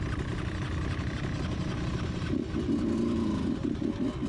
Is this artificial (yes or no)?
no